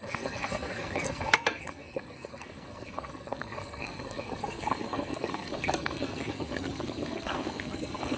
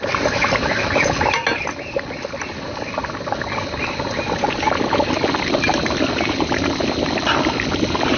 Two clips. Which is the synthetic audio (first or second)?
first